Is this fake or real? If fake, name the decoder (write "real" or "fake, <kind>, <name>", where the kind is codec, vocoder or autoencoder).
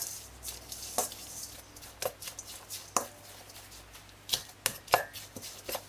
real